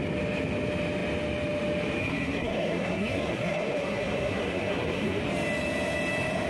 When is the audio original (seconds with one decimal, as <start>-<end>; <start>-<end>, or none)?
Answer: 0.0-2.0; 5.2-6.5